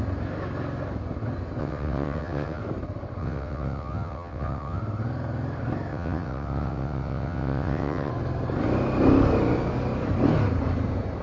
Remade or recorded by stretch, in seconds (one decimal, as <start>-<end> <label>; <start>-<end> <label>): 0.0-1.6 recorded; 1.6-2.6 remade; 2.6-3.2 recorded; 3.2-4.8 remade; 4.8-5.9 recorded; 5.9-8.1 remade; 8.1-11.2 recorded